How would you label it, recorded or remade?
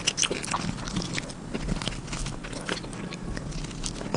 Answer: recorded